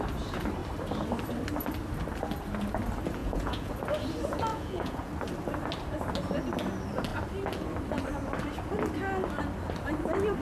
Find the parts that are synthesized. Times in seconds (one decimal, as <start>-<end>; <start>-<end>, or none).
3.2-3.7; 4.5-5.1